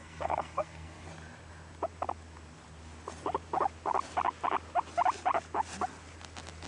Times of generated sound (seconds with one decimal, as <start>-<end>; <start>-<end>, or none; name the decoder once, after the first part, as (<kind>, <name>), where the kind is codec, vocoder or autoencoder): 0.0-1.1 (codec, SNAC)